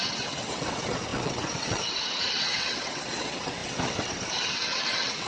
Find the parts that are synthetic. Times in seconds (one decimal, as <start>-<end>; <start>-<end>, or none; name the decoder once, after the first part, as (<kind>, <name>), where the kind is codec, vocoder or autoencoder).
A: 0.0-5.3 (vocoder, WaveNeXt)

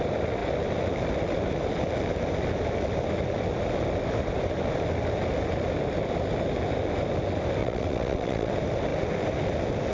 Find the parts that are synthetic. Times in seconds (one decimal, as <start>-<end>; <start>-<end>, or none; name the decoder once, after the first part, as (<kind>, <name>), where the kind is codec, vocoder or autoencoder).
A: 7.6-8.5 (vocoder, WaveNeXt)

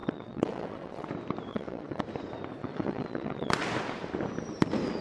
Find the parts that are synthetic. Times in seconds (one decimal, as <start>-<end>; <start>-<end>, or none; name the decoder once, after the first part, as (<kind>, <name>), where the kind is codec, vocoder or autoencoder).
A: 0.0-1.1 (vocoder, WaveNeXt); 1.5-2.0; 2.6-3.5

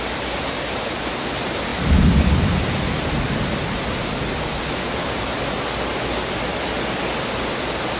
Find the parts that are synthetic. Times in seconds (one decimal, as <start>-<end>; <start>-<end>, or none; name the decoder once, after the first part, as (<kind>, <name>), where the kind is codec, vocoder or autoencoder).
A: none

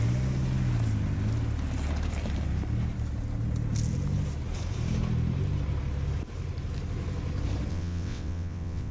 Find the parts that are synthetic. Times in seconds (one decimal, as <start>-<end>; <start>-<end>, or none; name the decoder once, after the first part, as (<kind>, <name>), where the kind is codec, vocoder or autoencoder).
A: 7.7-8.9 (vocoder, WaveNeXt)

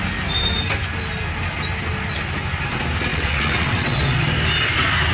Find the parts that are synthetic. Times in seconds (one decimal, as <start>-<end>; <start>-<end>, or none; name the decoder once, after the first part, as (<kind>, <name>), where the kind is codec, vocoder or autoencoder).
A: 3.1-4.2 (vocoder, WaveNeXt)

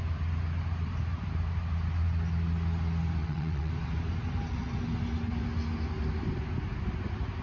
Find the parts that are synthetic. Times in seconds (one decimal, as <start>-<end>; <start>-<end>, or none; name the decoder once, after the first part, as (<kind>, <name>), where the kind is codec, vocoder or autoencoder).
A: 3.2-3.7 (vocoder, WaveNeXt)